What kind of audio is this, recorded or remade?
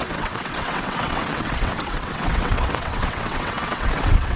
remade